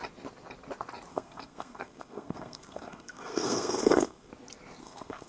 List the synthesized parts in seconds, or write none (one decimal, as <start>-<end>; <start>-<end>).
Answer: 1.1-4.3; 4.8-5.3